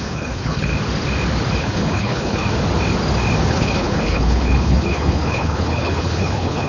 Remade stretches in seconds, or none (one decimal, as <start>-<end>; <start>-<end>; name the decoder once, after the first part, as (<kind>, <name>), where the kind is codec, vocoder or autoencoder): 0.0-0.7 (codec, HILCodec); 1.6-2.4; 3.5-6.7